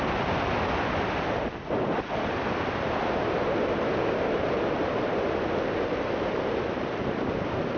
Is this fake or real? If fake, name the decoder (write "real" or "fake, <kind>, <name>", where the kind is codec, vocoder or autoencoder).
real